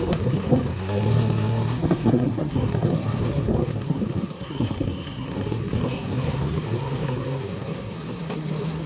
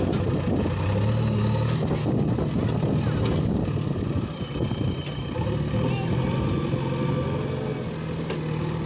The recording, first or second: second